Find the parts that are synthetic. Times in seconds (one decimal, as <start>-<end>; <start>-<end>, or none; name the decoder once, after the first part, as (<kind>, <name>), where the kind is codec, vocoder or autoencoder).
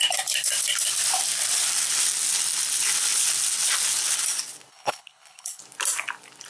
4.7-5.6 (codec, HILCodec)